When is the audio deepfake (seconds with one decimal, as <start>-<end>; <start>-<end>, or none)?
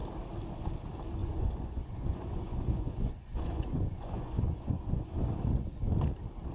1.2-5.1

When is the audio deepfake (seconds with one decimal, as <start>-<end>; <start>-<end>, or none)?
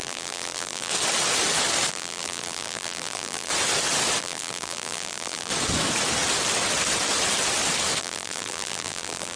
0.0-0.9; 1.9-3.5; 4.2-5.5; 8.0-9.4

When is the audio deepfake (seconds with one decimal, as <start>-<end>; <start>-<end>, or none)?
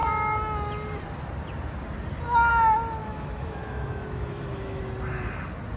3.0-4.8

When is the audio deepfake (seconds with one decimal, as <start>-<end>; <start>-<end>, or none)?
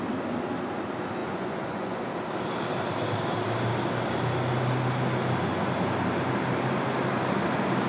1.2-2.0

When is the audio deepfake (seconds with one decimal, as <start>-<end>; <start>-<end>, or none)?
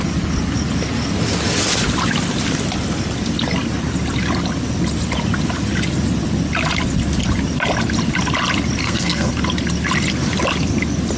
8.8-9.3